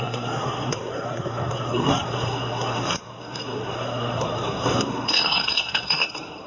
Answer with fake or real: fake